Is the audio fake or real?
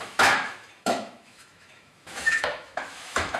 fake